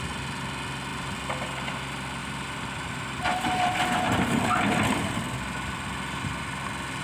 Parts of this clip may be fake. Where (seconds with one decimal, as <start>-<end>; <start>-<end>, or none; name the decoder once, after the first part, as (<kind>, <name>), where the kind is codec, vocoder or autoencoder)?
0.9-1.7 (vocoder, BigVGAN v2); 2.2-2.9